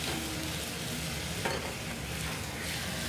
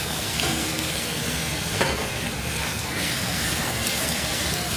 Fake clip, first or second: second